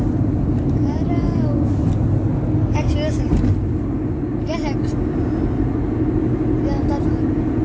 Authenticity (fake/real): real